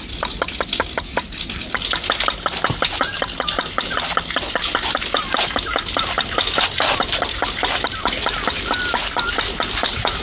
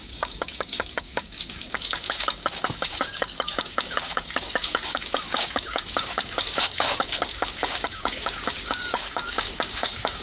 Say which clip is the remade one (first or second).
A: second